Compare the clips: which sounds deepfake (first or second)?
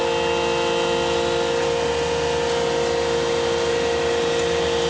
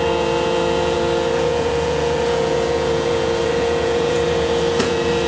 second